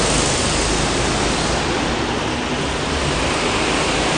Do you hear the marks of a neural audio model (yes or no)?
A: no